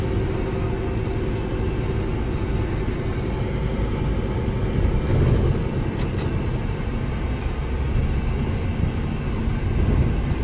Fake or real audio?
real